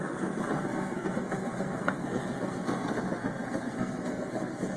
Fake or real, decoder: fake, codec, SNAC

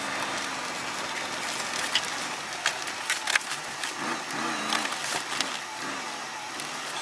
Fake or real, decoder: real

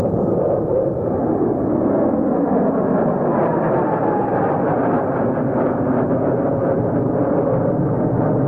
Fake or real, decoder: real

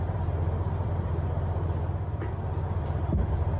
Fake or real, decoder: fake, vocoder, BigVGAN v2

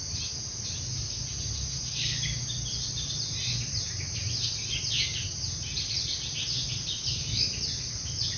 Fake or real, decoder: real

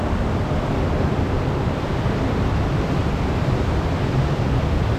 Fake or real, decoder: fake, vocoder, BigVGAN v2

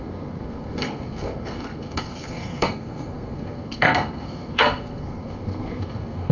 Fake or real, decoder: fake, codec, SNAC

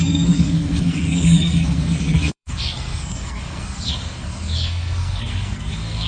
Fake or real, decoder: fake, codec, SNAC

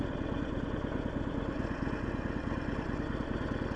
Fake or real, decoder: real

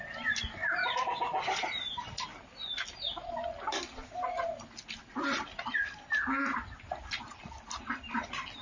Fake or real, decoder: real